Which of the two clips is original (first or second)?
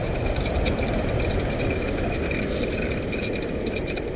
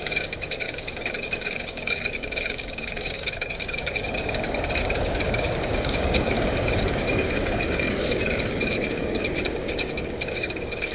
first